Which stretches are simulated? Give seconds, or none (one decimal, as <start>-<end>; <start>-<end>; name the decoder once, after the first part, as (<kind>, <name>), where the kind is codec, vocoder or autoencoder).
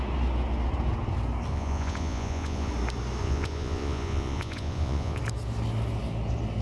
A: 1.5-2.7 (vocoder, Vocos); 3.2-5.2